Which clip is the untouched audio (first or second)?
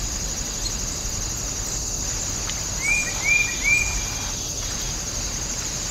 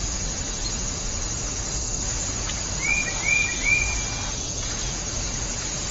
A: first